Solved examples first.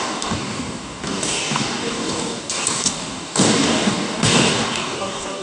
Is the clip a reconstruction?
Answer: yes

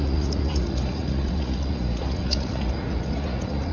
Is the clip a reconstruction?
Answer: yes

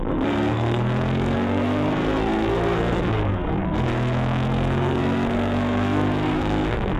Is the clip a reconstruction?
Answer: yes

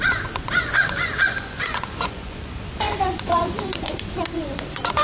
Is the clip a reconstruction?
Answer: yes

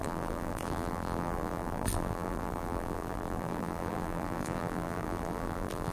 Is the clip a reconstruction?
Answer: yes